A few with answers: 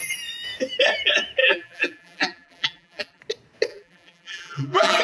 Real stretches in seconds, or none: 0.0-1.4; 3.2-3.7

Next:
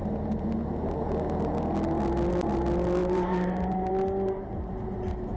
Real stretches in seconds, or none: 0.0-3.0; 3.9-5.4